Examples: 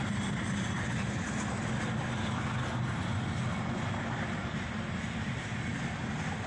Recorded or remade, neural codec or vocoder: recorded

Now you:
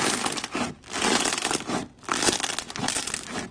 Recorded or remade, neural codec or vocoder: recorded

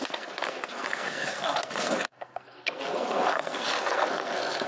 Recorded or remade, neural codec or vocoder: remade, codec, SNAC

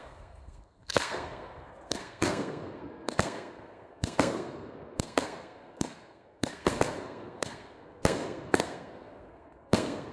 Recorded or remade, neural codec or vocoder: remade, codec, SNAC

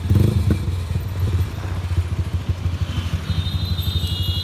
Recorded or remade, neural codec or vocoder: recorded